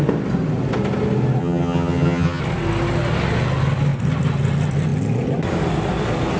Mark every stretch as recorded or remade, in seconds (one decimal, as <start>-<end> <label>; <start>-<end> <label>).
0.0-1.4 recorded; 1.4-2.4 remade; 2.4-6.4 recorded